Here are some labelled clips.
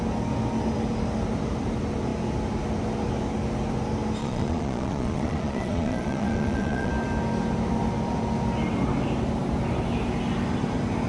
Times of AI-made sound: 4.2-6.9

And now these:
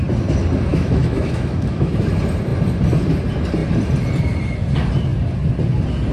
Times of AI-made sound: 0.7-1.9

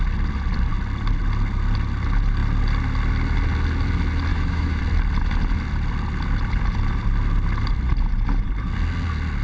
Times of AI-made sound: 4.3-4.8

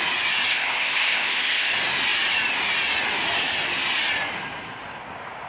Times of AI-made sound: 0.5-1.7

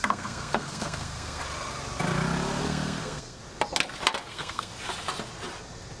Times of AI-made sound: 0.0-1.4; 2.6-3.4; 4.3-4.7

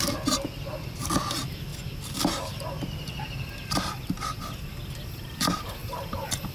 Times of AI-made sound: 5.8-6.5

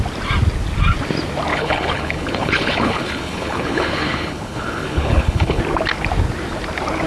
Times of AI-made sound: 1.5-5.6

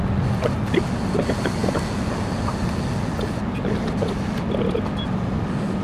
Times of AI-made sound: none